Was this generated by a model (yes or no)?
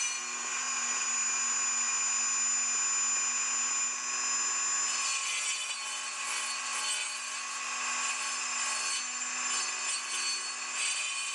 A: no